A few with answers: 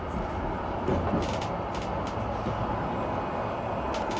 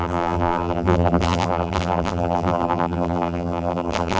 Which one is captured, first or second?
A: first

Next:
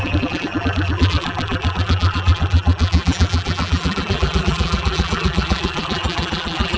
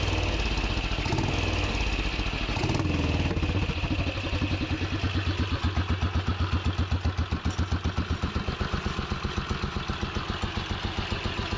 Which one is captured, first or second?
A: second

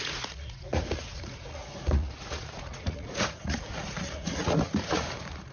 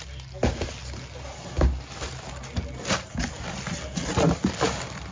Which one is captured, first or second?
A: second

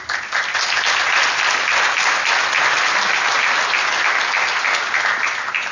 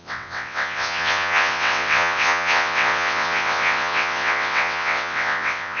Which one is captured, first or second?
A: first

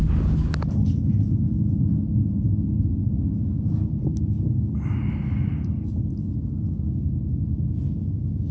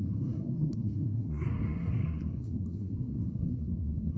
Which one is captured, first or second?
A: first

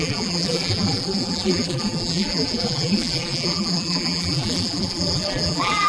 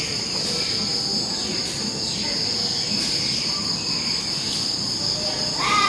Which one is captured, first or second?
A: second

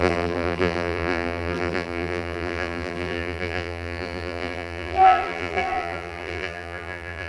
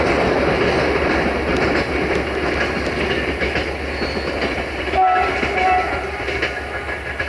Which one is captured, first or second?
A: second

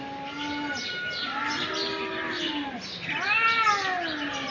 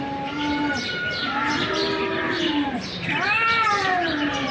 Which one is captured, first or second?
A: first